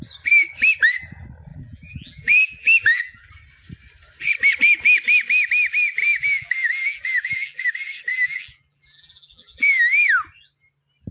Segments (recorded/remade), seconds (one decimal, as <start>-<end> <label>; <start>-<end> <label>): 0.0-1.5 recorded; 1.5-3.3 remade; 3.3-6.0 recorded; 6.0-7.6 remade; 7.6-8.1 recorded; 8.1-9.8 remade; 9.8-11.1 recorded